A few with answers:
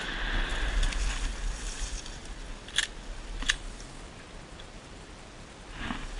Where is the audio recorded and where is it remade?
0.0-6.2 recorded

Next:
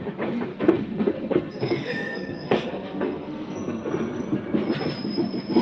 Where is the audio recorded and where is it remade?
0.0-0.5 recorded; 0.5-3.9 remade; 3.9-5.6 recorded